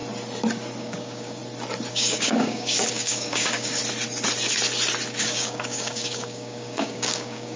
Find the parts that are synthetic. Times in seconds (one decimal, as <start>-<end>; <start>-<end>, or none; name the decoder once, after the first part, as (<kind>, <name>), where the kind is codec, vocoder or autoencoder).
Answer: 0.8-1.4 (codec, DAC); 1.9-3.8; 5.2-7.6